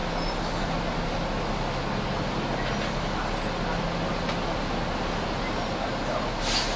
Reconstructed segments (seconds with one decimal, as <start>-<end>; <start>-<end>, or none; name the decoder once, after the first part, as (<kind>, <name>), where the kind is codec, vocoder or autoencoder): none